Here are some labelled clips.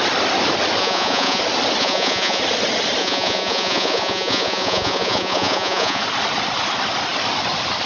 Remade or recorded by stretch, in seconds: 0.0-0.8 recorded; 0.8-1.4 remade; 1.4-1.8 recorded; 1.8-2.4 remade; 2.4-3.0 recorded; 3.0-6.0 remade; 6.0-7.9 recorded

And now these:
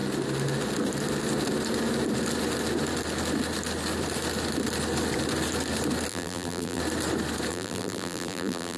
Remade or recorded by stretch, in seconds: 0.0-6.1 recorded; 6.1-6.8 remade; 6.8-7.5 recorded; 7.5-8.8 remade

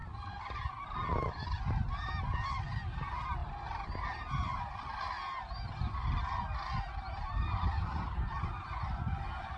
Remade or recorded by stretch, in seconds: 0.0-9.6 recorded

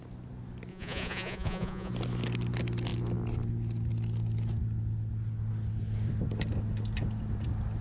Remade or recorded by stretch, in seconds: 0.0-0.7 recorded; 0.7-1.9 remade; 1.9-7.8 recorded